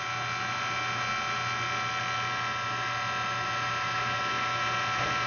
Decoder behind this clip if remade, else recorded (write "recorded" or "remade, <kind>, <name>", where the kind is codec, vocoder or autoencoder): recorded